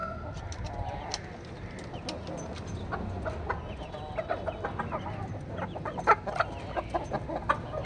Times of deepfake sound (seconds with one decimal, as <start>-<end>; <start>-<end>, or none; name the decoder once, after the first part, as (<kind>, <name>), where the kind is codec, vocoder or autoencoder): none